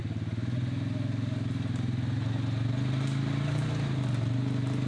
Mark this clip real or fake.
real